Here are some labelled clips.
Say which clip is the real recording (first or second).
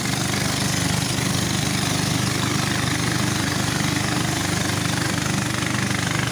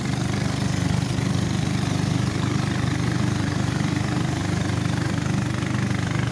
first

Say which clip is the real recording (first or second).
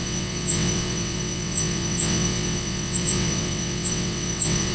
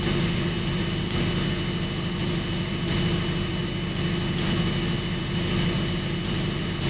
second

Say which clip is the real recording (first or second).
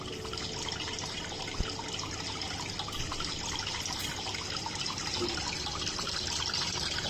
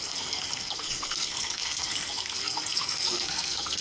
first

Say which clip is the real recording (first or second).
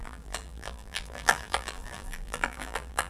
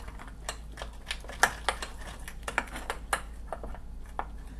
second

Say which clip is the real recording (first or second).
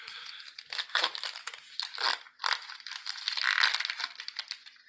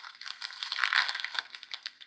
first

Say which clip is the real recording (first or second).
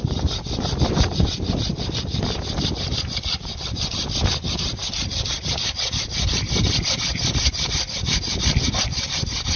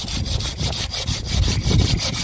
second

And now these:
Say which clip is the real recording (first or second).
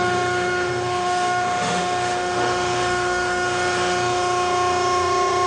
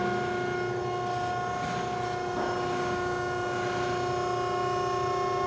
second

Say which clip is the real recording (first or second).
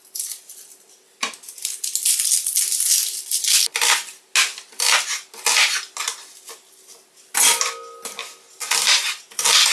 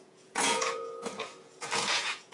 first